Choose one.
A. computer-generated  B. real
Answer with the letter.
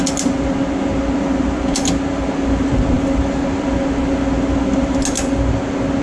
B